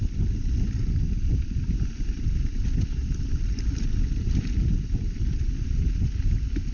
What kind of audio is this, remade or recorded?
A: recorded